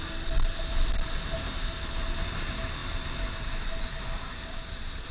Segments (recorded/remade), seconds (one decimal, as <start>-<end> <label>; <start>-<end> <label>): 0.0-5.1 recorded